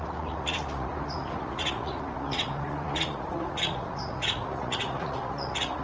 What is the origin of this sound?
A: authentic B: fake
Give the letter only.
B